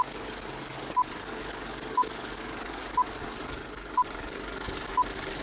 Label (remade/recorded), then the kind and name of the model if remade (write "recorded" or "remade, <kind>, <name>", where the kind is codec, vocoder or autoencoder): remade, codec, DAC